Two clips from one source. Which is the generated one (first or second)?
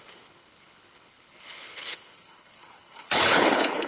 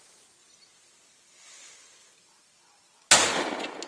first